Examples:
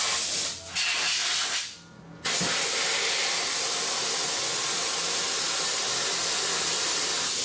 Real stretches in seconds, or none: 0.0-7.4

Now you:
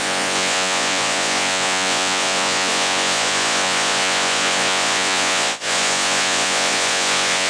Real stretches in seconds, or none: none

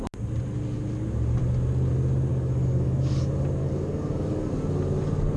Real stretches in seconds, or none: 0.0-2.3; 3.2-3.6; 4.5-5.4

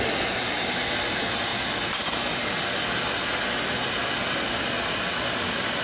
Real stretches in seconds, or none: 0.0-5.8

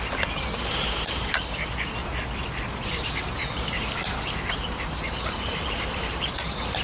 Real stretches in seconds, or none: 2.0-2.9

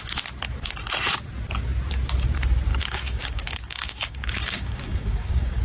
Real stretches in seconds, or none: 0.0-2.7